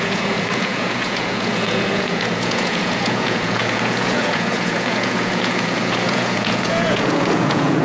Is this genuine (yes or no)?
no